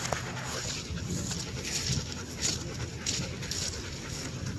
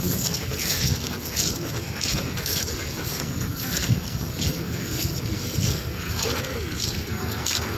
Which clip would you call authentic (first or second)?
first